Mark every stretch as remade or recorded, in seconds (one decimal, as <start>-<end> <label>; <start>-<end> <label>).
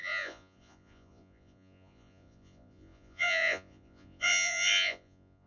0.0-5.5 remade